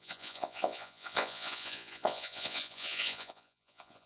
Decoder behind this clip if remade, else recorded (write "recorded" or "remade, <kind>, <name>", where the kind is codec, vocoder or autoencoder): remade, vocoder, Vocos